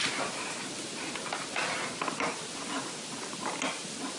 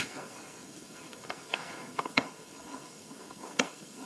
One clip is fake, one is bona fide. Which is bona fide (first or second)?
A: first